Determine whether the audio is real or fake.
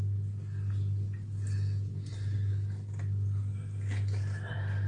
real